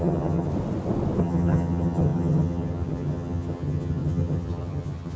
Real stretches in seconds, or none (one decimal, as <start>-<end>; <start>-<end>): 0.5-1.2